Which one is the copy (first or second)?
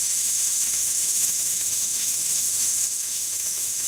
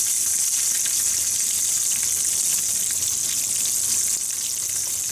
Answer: first